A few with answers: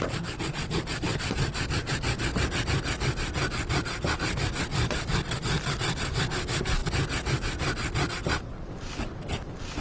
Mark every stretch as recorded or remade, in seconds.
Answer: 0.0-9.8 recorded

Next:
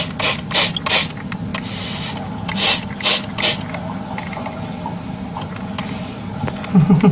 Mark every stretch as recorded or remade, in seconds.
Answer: 0.0-7.1 recorded

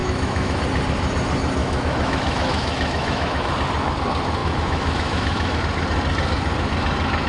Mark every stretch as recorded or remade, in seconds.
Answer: 0.0-0.6 remade; 0.6-1.6 recorded; 1.6-3.5 remade; 3.5-4.4 recorded; 4.4-5.6 remade; 5.6-7.3 recorded

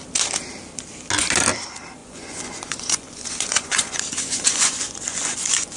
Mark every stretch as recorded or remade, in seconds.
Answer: 0.0-2.0 recorded; 2.0-5.8 remade

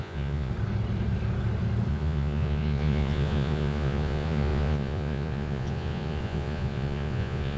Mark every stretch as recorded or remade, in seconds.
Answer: 0.0-0.5 remade; 0.5-1.9 recorded; 1.9-7.6 remade

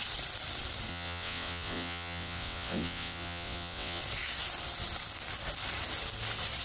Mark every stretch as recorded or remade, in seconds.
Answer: 0.0-0.9 recorded; 0.9-4.0 remade; 4.0-6.6 recorded

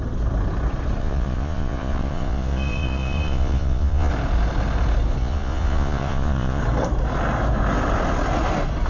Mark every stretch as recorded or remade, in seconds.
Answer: 0.0-1.0 recorded; 1.0-4.1 remade; 4.1-5.2 recorded; 5.2-6.6 remade; 6.6-8.9 recorded

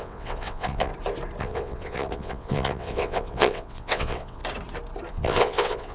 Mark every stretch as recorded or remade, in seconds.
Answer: 0.0-0.9 remade; 0.9-1.4 recorded; 1.4-4.4 remade; 4.4-5.1 recorded; 5.1-5.9 remade